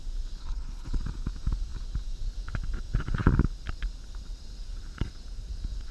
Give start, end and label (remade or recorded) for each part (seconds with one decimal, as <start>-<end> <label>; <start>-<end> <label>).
0.0-0.4 recorded; 0.4-1.0 remade; 1.0-5.9 recorded

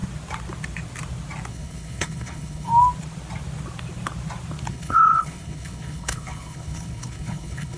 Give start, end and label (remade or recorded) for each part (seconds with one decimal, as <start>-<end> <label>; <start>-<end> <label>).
0.0-1.5 recorded; 1.5-2.7 remade; 2.7-4.7 recorded; 4.7-7.8 remade

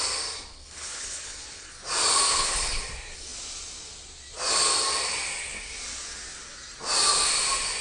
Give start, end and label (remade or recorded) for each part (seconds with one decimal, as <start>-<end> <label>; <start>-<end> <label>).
0.0-0.5 recorded; 0.5-1.7 remade; 1.7-2.3 recorded; 2.3-2.8 remade; 2.8-7.8 recorded

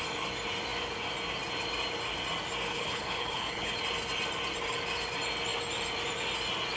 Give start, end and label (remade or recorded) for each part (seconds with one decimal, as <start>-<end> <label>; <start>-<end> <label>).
0.0-2.7 recorded; 2.7-3.8 remade; 3.8-6.8 recorded

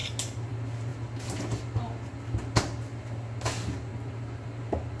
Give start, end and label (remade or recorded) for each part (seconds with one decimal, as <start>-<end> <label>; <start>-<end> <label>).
0.0-5.0 recorded

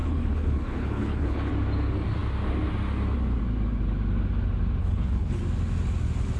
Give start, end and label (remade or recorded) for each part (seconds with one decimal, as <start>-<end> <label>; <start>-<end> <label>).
0.0-1.5 remade; 1.5-4.8 recorded; 4.8-5.4 remade; 5.4-6.4 recorded